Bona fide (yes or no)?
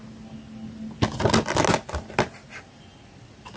yes